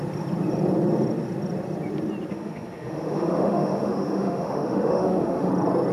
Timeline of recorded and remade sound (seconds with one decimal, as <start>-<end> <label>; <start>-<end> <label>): 0.0-2.3 recorded; 2.3-5.5 remade; 5.5-5.9 recorded